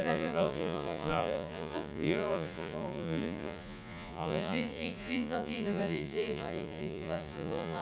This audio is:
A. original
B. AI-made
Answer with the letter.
B